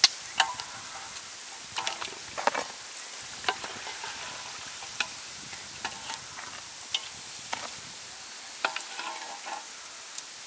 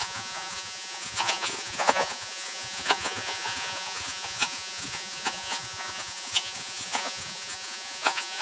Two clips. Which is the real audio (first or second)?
first